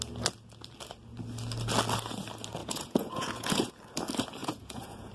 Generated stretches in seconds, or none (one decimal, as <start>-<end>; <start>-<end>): 2.6-3.7; 4.4-5.1